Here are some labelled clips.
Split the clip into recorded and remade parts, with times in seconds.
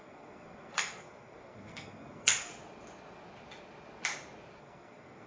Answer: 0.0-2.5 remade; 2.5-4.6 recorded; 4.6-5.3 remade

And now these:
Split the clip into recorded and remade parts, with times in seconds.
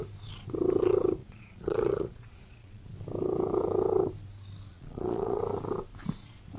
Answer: 0.0-1.2 recorded; 1.2-2.9 remade; 2.9-4.7 recorded; 4.7-5.4 remade; 5.4-6.6 recorded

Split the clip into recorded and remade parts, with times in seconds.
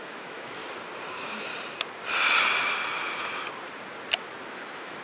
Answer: 0.0-0.6 remade; 0.6-1.1 recorded; 1.1-1.5 remade; 1.5-4.5 recorded; 4.5-5.0 remade